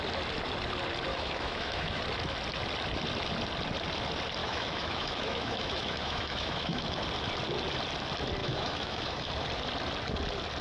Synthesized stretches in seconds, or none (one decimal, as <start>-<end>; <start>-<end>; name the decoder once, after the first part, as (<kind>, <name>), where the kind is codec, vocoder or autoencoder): 1.1-2.0 (autoencoder, DAC-VAE); 4.4-7.0; 8.4-9.3